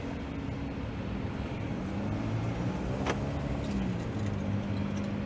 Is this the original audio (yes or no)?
yes